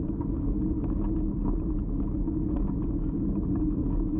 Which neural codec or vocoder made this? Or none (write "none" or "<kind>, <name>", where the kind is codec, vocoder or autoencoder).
none